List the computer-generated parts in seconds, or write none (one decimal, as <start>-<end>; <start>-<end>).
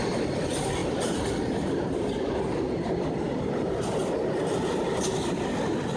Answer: none